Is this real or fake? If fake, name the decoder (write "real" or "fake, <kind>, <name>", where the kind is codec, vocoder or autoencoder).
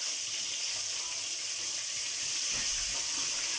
real